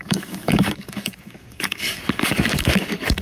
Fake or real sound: fake